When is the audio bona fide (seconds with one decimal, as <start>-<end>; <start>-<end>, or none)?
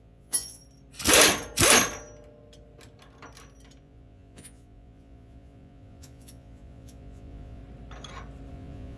0.6-3.8; 7.6-8.5